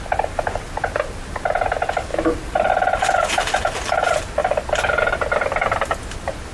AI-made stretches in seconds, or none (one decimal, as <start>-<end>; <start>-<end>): 2.1-2.7; 4.4-6.0